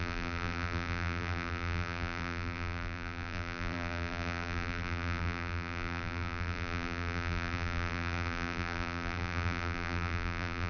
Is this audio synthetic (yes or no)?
yes